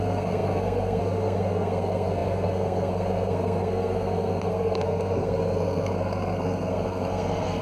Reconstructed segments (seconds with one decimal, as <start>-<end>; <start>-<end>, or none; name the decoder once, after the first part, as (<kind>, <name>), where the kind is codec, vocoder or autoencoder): 0.0-7.6 (codec, SNAC)